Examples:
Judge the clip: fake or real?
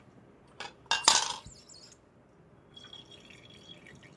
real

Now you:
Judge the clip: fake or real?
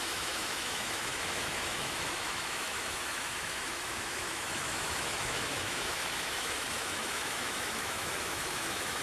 fake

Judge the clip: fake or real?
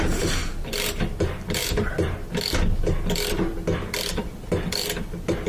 real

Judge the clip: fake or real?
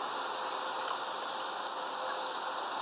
real